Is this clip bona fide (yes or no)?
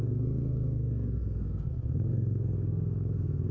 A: no